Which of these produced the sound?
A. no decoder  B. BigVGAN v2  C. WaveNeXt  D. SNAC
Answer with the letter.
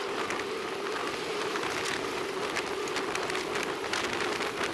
A